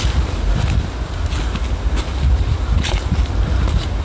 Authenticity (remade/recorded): recorded